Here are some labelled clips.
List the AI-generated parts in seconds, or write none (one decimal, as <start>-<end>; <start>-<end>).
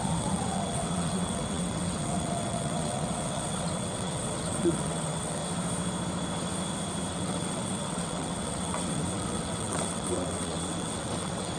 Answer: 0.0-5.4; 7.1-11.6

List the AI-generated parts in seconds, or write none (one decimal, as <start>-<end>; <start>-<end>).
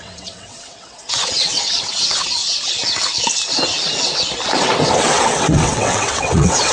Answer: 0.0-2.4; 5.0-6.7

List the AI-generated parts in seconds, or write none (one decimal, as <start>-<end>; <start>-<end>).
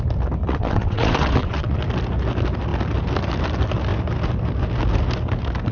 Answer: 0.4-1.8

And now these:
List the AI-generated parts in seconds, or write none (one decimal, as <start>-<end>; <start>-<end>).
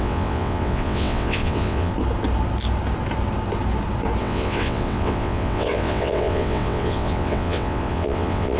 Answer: 0.0-1.9; 4.2-8.6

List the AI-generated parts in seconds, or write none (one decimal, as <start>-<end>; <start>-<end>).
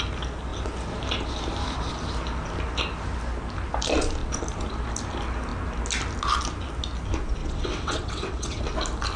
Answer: 7.4-8.6